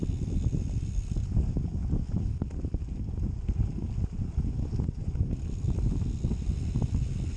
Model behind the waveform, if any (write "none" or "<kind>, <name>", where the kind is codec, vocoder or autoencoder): none